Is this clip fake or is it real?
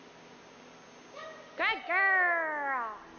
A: real